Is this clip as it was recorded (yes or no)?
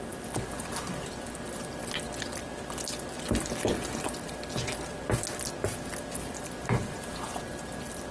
yes